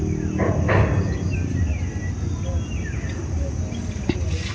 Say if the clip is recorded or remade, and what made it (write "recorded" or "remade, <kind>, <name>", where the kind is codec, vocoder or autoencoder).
recorded